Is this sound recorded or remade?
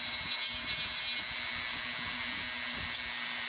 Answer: recorded